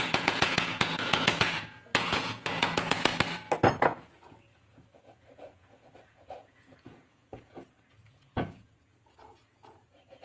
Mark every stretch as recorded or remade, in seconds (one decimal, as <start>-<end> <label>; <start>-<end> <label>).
0.0-3.1 remade; 3.1-3.8 recorded; 3.8-10.2 remade